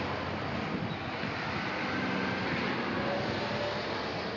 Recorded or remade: recorded